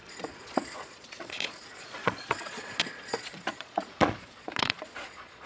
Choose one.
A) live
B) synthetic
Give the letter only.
B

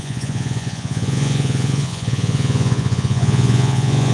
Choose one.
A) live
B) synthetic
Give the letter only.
B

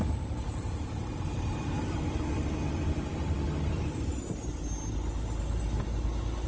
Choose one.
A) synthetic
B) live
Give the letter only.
B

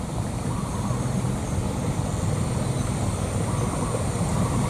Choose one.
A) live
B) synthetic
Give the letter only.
A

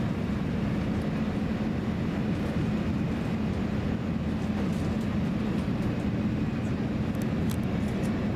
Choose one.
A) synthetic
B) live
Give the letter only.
B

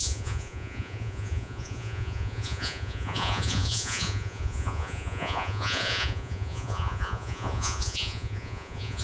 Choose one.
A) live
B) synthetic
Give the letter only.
B